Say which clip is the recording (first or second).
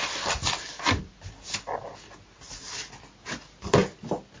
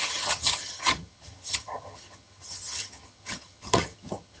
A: first